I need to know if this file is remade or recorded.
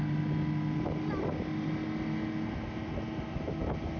recorded